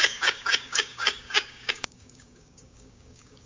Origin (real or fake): fake